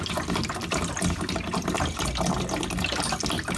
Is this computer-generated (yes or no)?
no